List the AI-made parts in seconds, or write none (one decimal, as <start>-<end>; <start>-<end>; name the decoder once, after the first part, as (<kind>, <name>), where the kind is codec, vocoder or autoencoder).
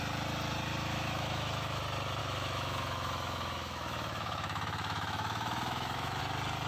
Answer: 0.7-1.8 (autoencoder, DAC-VAE); 2.2-6.2